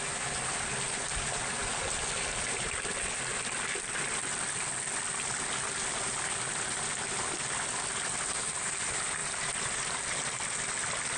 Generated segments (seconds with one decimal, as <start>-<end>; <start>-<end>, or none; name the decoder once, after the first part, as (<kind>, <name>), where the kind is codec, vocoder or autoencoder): 9.2-10.4 (vocoder, BigVGAN v2)

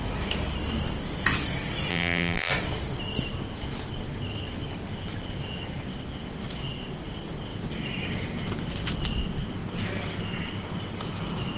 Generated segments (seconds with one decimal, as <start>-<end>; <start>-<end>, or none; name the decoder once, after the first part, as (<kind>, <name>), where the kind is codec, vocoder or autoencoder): 1.9-2.5 (vocoder, BigVGAN v2)

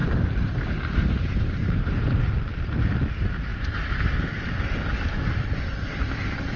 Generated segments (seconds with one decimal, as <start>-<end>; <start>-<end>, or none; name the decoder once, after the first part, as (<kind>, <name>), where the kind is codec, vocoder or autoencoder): 0.0-2.3 (vocoder, BigVGAN v2); 3.5-4.1

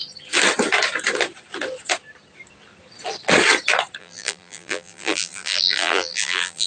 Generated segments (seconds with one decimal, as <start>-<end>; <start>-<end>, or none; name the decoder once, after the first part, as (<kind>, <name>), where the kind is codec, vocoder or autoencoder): 4.0-6.7 (vocoder, BigVGAN v2)

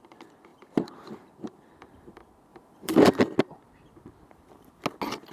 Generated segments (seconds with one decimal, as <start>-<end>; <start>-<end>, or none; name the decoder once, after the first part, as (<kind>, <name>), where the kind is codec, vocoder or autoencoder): 0.5-2.1 (vocoder, BigVGAN v2); 2.5-3.2

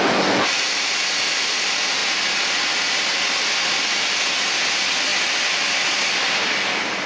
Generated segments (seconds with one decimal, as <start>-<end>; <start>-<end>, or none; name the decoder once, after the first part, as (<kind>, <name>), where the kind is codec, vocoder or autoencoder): none

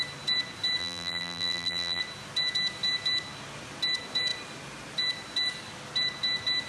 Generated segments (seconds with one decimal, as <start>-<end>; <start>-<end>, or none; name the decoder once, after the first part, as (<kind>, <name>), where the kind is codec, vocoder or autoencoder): 0.8-2.0 (vocoder, BigVGAN v2)

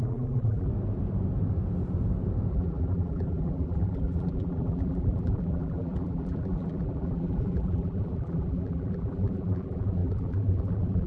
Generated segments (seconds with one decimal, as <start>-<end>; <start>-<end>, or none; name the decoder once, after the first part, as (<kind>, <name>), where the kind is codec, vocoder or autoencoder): 0.0-0.7 (vocoder, BigVGAN v2); 2.5-11.1